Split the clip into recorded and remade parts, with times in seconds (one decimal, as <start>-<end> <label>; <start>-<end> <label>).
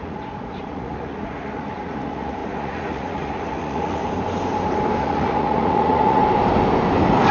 0.0-4.0 remade; 4.0-5.0 recorded; 5.0-6.2 remade; 6.2-7.3 recorded